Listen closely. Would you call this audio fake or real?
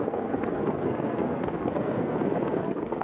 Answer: fake